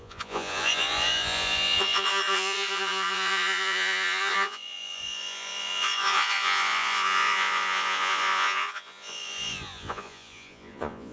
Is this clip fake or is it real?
fake